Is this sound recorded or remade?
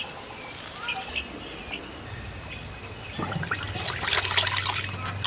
recorded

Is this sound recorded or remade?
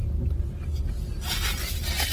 recorded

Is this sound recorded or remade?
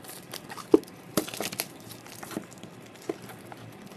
recorded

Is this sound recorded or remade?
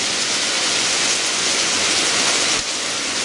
remade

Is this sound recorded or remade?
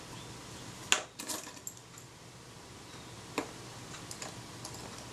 recorded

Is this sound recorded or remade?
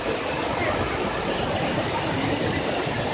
recorded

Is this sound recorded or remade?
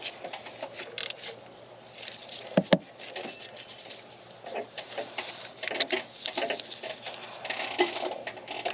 recorded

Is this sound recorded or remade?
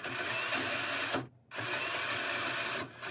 recorded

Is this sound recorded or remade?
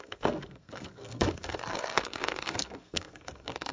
remade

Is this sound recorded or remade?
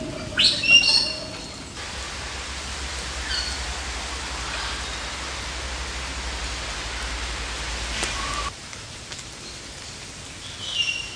recorded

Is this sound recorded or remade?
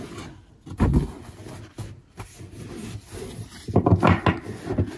recorded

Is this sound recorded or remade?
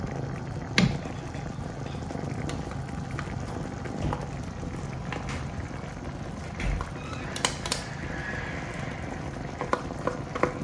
recorded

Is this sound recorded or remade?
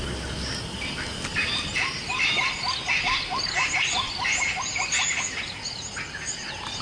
recorded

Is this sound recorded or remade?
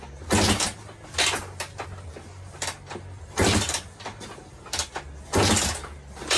recorded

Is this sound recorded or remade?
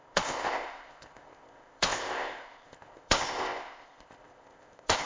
remade